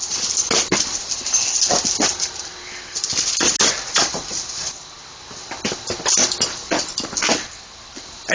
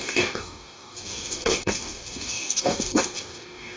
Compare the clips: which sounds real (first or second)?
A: first